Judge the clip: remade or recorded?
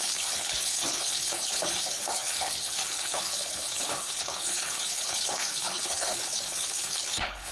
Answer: remade